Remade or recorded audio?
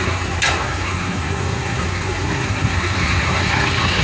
remade